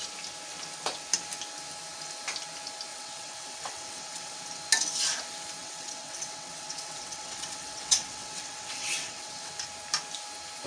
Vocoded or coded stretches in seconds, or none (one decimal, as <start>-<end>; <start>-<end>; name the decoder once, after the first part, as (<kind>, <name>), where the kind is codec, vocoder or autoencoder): 2.9-4.4 (vocoder, WaveNeXt); 5.6-9.5